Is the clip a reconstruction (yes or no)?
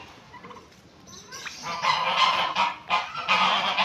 no